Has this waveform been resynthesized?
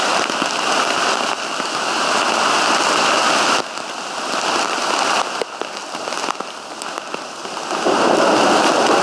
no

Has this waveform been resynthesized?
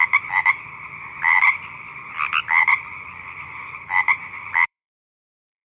yes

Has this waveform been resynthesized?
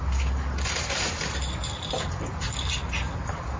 no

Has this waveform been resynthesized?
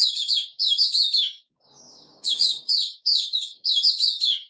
yes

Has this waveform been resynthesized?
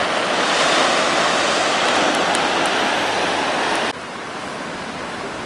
no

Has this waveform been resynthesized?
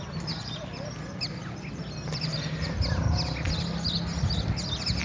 no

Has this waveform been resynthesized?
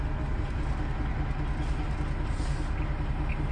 no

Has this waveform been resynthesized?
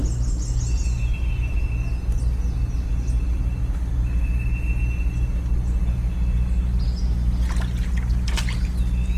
no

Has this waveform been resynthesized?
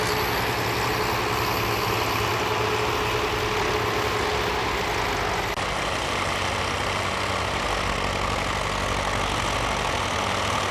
no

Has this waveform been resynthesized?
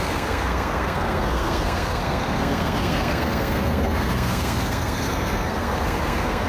yes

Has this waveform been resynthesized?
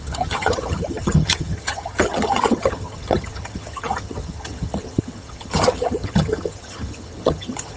yes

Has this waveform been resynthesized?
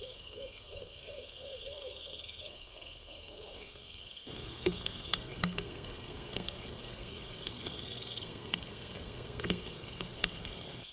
yes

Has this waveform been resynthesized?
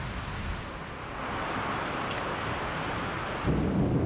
no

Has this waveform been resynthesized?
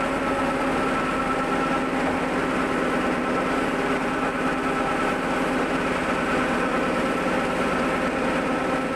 no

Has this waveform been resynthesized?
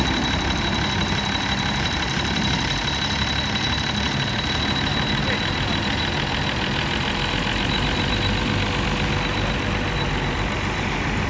no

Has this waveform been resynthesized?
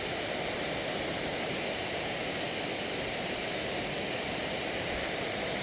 no